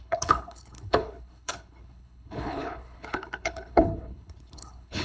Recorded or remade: remade